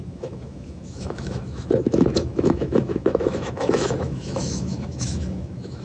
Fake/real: fake